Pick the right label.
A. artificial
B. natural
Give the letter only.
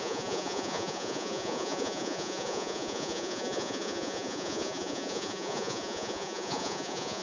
A